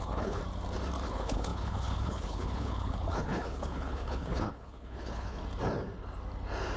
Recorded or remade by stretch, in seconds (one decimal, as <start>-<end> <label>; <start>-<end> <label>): 0.0-0.4 remade; 0.4-1.1 recorded; 1.1-5.4 remade; 5.4-6.8 recorded